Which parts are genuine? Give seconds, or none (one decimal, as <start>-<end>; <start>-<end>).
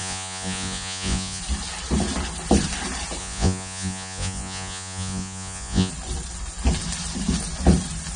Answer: 1.4-3.2; 5.9-8.2